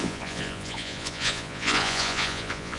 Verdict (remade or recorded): remade